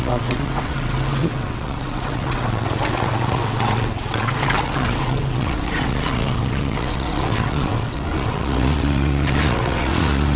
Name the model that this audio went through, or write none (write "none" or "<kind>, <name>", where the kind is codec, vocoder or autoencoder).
vocoder, WaveNeXt